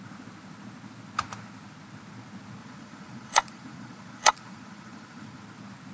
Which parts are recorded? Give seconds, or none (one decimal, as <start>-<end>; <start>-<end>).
0.0-2.6; 5.4-5.9